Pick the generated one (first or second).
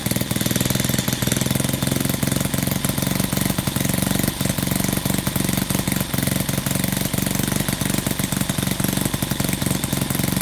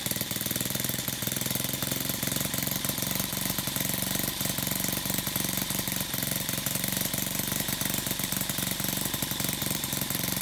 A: second